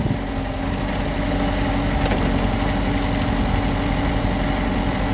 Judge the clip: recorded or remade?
recorded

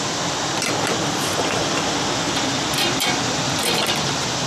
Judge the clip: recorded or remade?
remade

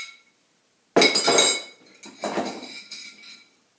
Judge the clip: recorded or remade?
recorded